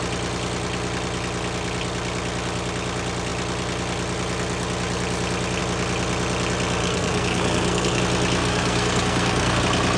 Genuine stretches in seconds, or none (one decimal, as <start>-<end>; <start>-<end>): 0.0-6.8; 8.0-8.4; 9.6-10.0